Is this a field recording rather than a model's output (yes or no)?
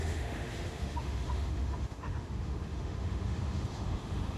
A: no